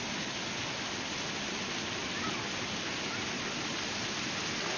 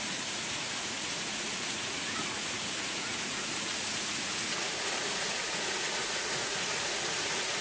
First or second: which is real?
first